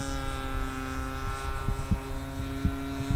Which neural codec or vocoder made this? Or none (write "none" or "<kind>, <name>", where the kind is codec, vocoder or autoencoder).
none